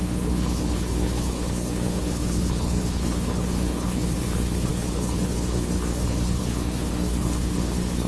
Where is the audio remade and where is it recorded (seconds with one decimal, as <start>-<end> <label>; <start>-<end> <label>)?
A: 0.0-8.1 remade